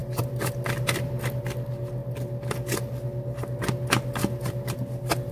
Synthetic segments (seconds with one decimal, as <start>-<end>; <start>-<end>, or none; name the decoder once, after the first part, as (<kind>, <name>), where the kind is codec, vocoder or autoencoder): 4.2-5.3 (vocoder, BigVGAN v2)